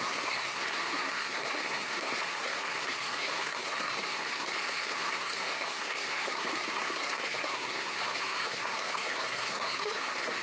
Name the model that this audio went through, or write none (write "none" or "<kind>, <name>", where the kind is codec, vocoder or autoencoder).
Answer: codec, SNAC